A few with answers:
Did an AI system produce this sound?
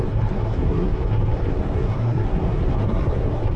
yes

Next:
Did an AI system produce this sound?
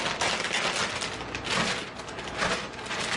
no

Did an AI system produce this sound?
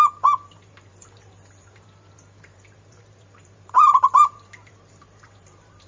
yes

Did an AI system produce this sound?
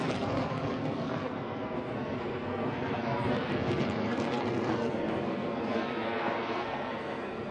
yes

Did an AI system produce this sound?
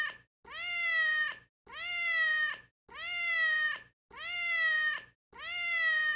no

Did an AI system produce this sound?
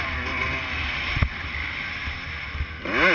no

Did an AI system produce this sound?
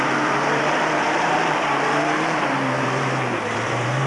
yes